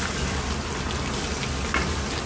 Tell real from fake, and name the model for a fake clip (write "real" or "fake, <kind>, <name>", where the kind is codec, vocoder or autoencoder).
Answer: real